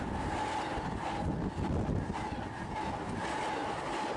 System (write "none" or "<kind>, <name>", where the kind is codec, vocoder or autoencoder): none